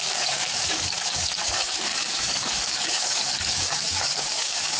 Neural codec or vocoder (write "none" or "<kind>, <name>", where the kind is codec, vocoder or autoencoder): codec, DAC